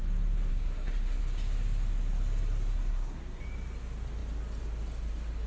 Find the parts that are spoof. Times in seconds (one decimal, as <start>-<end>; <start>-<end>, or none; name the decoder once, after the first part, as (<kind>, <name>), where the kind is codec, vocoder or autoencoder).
0.5-1.2 (codec, SNAC); 2.7-3.4